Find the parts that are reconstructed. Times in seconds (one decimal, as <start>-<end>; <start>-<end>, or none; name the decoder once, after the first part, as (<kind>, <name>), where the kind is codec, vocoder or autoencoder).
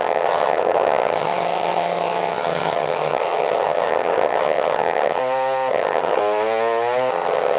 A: 0.0-5.2 (vocoder, HiFi-GAN); 5.7-6.2; 7.1-7.6